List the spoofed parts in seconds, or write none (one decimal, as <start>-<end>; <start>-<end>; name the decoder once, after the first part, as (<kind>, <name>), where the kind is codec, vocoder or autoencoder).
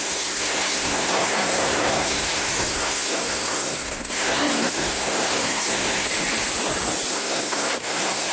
0.0-6.1 (codec, SNAC); 7.1-8.3